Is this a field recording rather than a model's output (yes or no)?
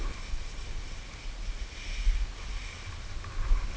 yes